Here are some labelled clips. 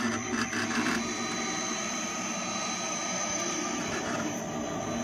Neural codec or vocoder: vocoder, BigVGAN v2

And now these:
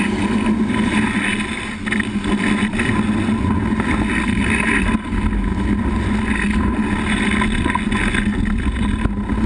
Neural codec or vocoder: none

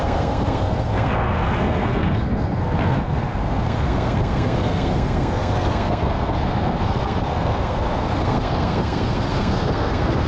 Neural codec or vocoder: codec, SNAC